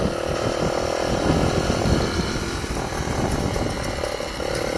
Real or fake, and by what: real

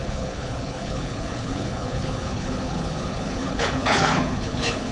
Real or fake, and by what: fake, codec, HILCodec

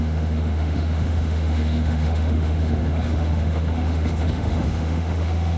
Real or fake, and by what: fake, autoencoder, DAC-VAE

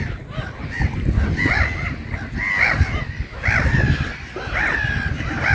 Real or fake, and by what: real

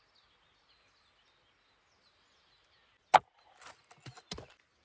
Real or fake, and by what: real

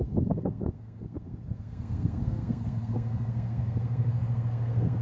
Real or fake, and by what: fake, codec, SNAC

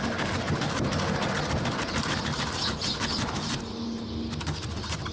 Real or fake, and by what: real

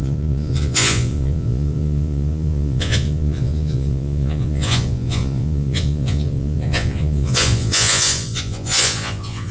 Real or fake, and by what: fake, vocoder, Vocos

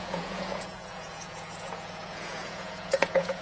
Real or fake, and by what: fake, vocoder, Vocos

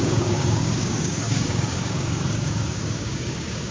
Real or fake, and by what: fake, codec, DAC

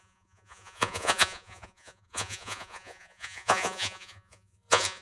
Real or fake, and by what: fake, vocoder, Vocos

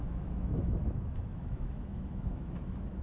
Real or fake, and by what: fake, autoencoder, DAC-VAE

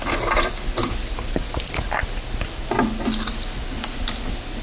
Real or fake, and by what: real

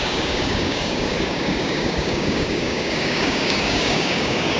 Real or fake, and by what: fake, codec, DAC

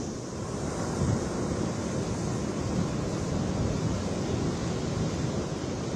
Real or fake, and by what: real